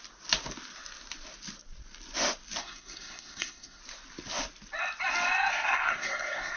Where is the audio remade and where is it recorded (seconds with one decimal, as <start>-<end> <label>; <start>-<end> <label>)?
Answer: 0.0-2.6 recorded; 2.6-3.8 remade; 3.8-5.5 recorded; 5.5-6.6 remade